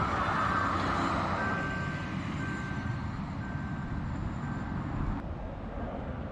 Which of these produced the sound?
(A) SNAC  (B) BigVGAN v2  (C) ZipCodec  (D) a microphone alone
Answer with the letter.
D